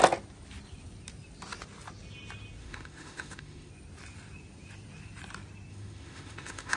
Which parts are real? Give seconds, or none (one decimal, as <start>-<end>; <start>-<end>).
0.0-2.6; 3.7-5.7